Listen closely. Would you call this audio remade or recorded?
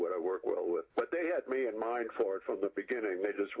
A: recorded